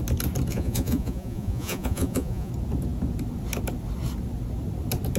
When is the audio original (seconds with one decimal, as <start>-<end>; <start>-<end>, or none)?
0.0-0.5; 2.5-5.2